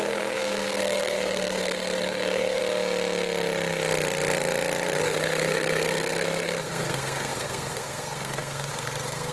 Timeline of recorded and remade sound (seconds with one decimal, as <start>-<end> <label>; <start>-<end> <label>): 0.0-2.6 remade; 2.6-5.0 recorded; 5.0-9.3 remade